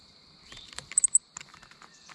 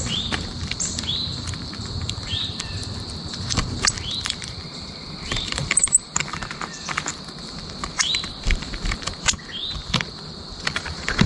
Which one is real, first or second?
first